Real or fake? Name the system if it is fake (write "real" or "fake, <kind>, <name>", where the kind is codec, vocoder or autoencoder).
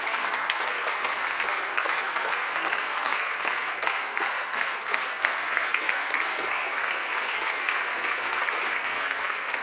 fake, codec, SNAC